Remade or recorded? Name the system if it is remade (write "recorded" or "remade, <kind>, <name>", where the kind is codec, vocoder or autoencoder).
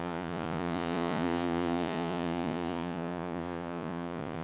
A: remade, vocoder, Vocos